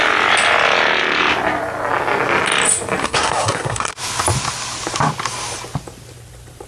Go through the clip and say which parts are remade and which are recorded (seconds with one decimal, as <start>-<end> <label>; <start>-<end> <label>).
0.0-3.0 recorded; 3.0-3.9 remade; 3.9-6.7 recorded